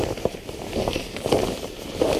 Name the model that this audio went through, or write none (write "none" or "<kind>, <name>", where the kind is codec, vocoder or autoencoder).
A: vocoder, BigVGAN v2